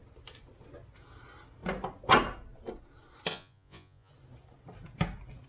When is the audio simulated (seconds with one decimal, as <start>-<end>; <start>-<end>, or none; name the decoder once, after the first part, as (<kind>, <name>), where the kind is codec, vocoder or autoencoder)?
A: 3.3-4.1 (vocoder, Vocos)